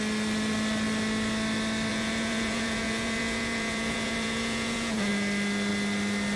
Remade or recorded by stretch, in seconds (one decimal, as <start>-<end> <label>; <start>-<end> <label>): 0.0-1.9 recorded; 1.9-5.1 remade; 5.1-6.4 recorded